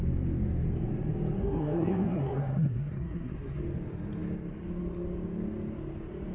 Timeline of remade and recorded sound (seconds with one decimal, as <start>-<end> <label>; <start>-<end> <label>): 0.0-1.4 recorded; 1.4-3.6 remade; 3.6-6.3 recorded